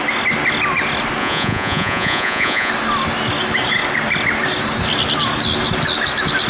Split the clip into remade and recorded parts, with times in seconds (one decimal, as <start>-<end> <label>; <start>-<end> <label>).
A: 0.0-1.2 recorded; 1.2-2.7 remade; 2.7-6.5 recorded